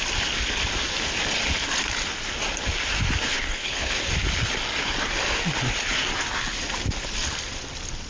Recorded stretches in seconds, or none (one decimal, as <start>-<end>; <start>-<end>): 0.0-3.3; 3.9-8.1